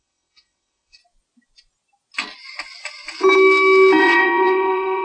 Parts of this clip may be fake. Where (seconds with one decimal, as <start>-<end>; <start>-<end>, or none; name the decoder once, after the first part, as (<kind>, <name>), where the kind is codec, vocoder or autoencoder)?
0.0-1.0 (vocoder, WaveNeXt); 4.0-5.0